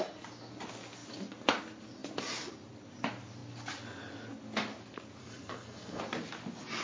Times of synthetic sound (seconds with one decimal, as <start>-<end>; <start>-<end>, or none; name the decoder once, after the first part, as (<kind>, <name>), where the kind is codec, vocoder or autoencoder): 5.2-6.0 (codec, SNAC)